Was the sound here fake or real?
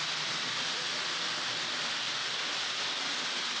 real